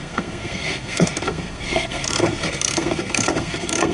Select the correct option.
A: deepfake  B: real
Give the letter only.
A